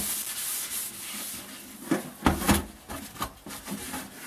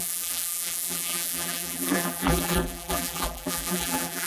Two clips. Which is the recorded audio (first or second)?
first